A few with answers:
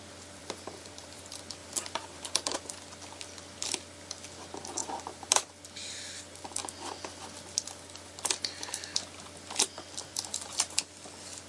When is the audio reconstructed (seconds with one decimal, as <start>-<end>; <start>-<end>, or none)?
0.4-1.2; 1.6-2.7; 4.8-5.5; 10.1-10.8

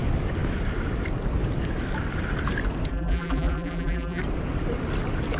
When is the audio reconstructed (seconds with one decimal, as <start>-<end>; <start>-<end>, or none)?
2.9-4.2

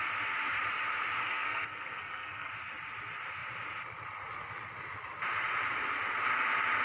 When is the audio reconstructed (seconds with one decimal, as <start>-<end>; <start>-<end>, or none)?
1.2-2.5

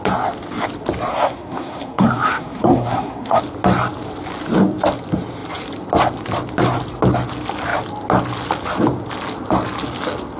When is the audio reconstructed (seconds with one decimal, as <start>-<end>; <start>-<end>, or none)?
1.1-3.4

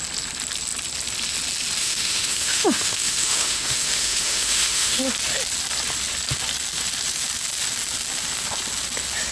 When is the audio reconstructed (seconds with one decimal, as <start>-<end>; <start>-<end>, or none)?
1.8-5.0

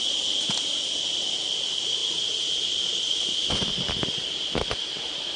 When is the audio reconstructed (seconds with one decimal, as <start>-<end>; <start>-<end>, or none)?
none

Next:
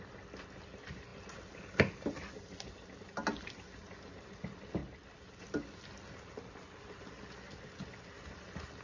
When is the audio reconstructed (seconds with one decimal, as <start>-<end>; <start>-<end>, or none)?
none